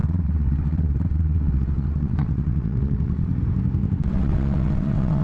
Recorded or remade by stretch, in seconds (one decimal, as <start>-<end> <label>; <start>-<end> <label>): 0.0-3.3 remade; 3.3-4.0 recorded; 4.0-5.2 remade